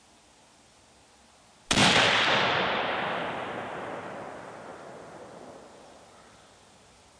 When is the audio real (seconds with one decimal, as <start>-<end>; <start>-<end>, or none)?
0.0-7.2